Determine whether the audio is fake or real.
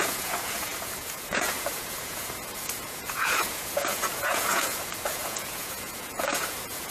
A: fake